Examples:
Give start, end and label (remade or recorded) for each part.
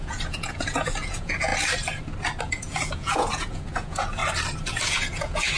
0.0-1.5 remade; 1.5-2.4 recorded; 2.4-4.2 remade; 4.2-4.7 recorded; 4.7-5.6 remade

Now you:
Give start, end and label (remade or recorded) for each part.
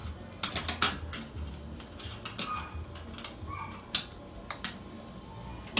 0.0-5.8 recorded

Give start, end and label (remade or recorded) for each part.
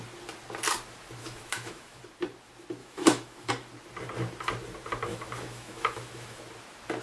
0.0-1.2 recorded; 1.2-2.0 remade; 2.0-2.8 recorded; 2.8-3.5 remade; 3.5-5.1 recorded; 5.1-6.4 remade; 6.4-7.0 recorded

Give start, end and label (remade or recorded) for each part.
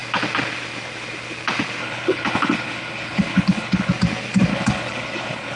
0.0-1.8 recorded; 1.8-3.9 remade; 3.9-4.5 recorded; 4.5-5.6 remade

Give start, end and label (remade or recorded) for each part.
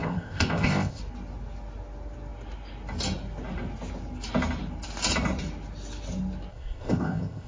0.0-1.0 remade; 1.0-6.5 recorded; 6.5-7.5 remade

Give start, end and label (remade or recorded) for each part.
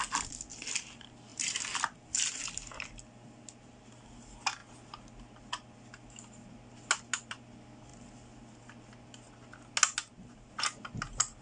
0.0-1.3 recorded; 1.3-2.5 remade; 2.5-10.0 recorded; 10.0-10.5 remade; 10.5-11.4 recorded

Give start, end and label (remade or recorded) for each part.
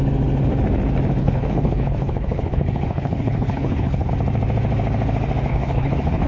0.0-1.2 recorded; 1.2-4.1 remade; 4.1-5.5 recorded; 5.5-6.3 remade